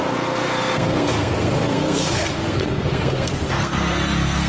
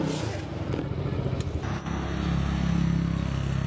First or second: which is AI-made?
first